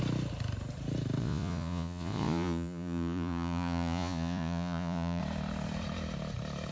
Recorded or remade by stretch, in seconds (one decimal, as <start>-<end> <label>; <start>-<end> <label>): 0.0-1.2 recorded; 1.2-5.2 remade; 5.2-6.7 recorded